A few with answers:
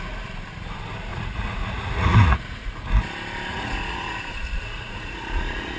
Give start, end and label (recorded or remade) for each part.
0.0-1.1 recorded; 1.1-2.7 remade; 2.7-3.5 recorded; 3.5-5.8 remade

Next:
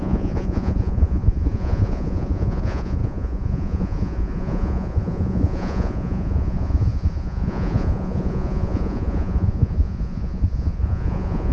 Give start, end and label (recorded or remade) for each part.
0.0-11.5 remade

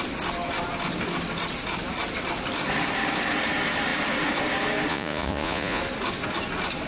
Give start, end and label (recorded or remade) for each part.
0.0-4.9 recorded; 4.9-5.8 remade; 5.8-6.9 recorded

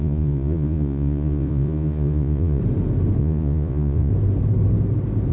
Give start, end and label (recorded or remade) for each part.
0.0-2.6 remade; 2.6-3.2 recorded; 3.2-4.1 remade; 4.1-5.3 recorded